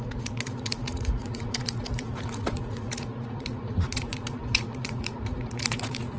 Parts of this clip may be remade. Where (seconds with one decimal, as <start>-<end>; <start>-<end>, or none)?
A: 0.0-6.2